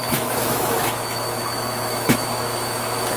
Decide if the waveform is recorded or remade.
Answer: remade